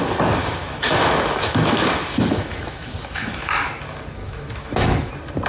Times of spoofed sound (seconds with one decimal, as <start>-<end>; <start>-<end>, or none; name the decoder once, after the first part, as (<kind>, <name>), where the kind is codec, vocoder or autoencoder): 0.4-3.7 (autoencoder, DAC-VAE); 4.2-5.1